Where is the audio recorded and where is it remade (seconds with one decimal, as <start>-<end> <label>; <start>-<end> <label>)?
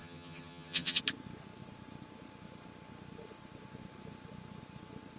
0.0-1.0 remade; 1.0-5.2 recorded